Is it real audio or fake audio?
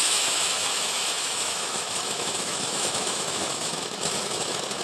fake